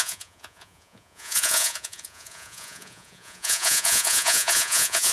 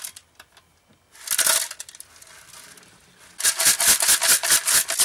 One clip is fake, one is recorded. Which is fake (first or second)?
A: first